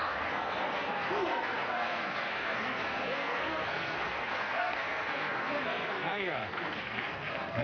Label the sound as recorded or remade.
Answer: remade